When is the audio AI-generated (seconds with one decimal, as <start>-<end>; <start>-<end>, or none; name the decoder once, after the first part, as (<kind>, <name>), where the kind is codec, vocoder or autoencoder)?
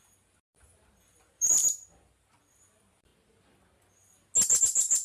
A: 0.0-3.1 (vocoder, BigVGAN v2); 4.6-5.0